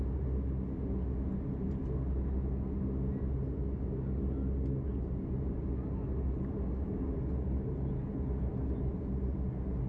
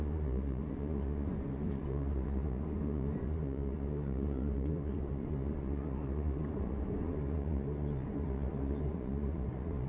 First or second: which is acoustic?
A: first